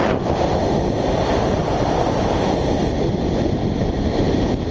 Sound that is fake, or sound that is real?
real